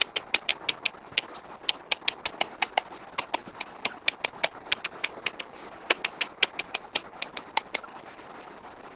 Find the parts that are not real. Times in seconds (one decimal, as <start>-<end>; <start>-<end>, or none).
0.0-0.5; 1.4-9.0